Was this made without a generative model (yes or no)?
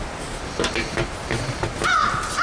yes